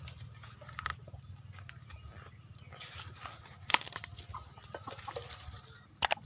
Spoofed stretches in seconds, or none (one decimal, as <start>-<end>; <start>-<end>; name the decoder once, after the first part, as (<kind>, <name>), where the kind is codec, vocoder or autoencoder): 0.0-6.3 (vocoder, BigVGAN v2)